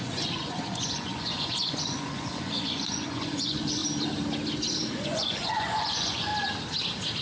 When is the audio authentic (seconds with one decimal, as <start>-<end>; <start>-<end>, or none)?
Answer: 3.8-4.9; 6.3-7.2